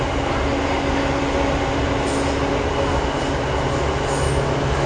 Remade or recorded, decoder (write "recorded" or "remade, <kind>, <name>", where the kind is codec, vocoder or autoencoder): recorded